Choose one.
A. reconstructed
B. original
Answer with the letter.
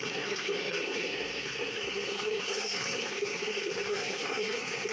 A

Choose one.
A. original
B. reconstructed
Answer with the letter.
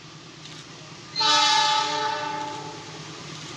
A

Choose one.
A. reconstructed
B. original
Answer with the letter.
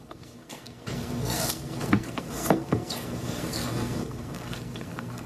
A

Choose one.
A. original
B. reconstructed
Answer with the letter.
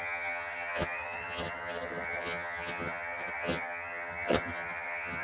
B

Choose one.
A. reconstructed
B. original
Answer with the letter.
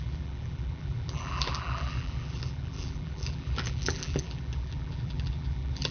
A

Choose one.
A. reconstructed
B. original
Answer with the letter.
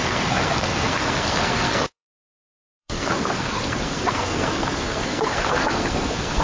A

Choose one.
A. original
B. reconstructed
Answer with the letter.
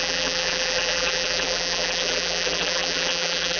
B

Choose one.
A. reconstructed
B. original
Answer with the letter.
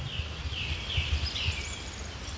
B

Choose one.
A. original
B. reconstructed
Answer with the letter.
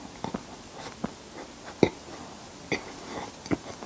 A